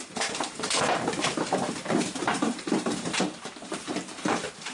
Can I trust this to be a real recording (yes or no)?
no